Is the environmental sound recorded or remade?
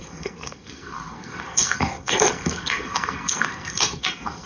remade